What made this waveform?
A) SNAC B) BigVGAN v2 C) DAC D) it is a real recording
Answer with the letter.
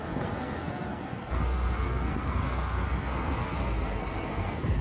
A